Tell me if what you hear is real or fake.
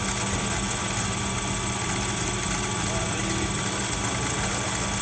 real